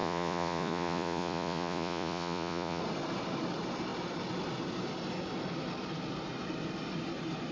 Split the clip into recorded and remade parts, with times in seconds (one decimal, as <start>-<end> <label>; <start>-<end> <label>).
0.0-2.8 remade; 2.8-7.5 recorded